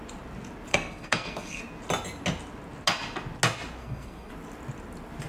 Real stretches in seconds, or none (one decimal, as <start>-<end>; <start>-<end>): 0.0-0.7; 1.6-3.8; 4.3-5.3